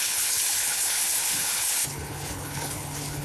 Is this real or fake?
fake